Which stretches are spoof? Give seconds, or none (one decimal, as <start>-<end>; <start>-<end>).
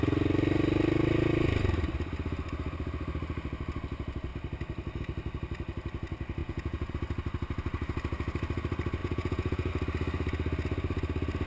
6.4-6.9; 9.0-9.7